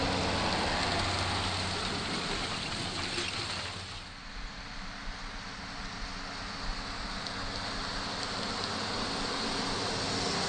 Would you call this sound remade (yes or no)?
no